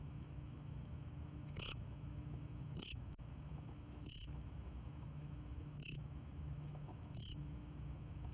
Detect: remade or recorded remade